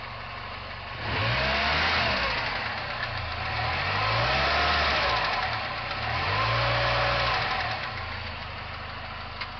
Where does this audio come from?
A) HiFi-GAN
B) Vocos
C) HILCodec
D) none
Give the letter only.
D